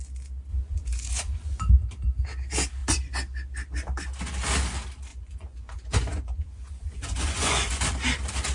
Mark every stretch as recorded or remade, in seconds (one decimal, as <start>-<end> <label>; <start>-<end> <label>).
0.0-0.5 recorded; 0.5-1.7 remade; 1.7-5.1 recorded; 5.1-7.8 remade; 7.8-8.5 recorded